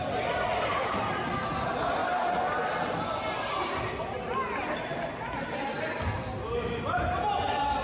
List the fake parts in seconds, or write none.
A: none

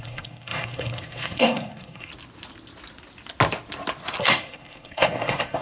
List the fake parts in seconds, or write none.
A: 0.0-2.1; 4.2-5.6

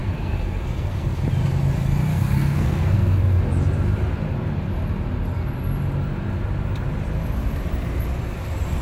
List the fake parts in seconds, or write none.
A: 0.0-1.2; 2.1-3.4

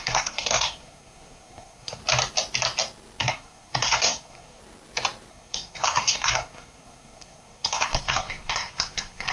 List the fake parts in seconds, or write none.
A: 0.0-2.0; 3.2-4.6; 5.3-9.3

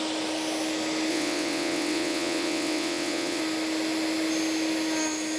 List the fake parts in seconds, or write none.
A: 1.1-3.4

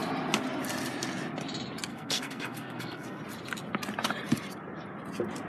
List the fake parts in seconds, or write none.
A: 1.9-3.2